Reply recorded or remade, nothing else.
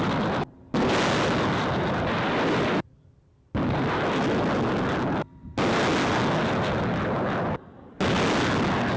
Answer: recorded